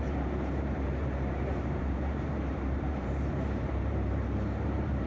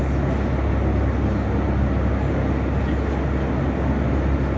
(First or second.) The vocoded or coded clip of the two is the first